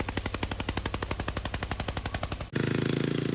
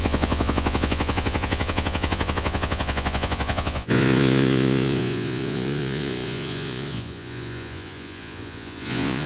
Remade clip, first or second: second